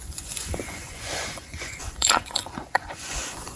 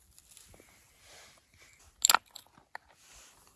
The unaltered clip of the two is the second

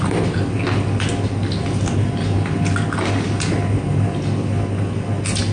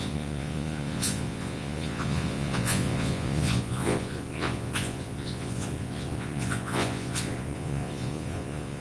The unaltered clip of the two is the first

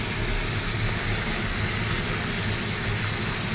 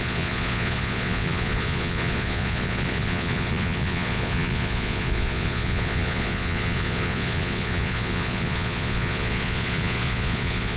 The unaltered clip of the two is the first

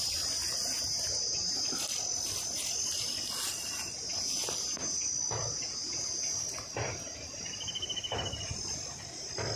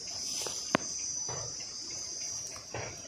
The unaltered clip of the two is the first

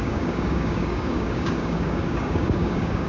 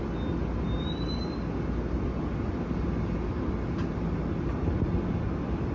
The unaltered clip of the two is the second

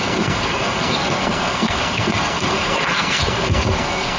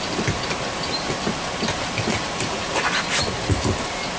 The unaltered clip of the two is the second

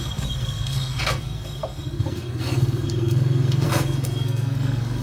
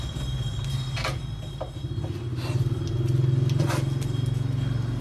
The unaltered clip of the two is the second